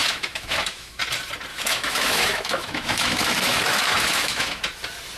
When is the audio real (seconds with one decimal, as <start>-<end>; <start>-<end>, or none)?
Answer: 1.0-1.5; 4.6-5.2